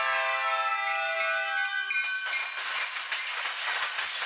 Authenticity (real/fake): real